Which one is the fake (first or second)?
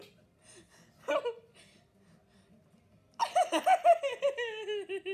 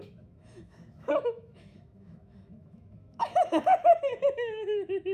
second